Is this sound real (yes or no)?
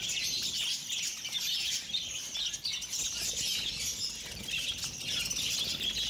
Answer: yes